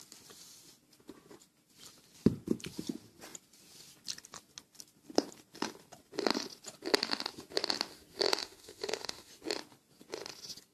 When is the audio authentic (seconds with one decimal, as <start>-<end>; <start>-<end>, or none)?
0.0-8.4; 9.3-10.7